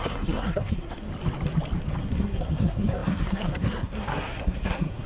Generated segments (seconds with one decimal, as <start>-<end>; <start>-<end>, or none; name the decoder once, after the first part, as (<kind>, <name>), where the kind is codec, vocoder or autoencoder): 0.0-1.1 (codec, SNAC); 2.0-5.1